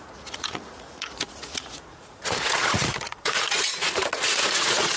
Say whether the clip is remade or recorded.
remade